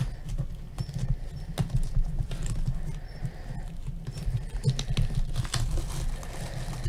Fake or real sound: real